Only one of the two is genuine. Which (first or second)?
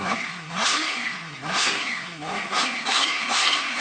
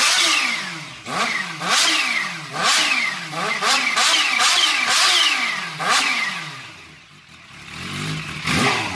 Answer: second